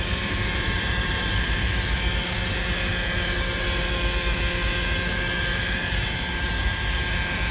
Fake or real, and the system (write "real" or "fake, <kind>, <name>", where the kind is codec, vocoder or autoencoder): real